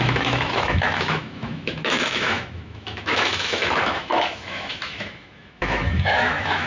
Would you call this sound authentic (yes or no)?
no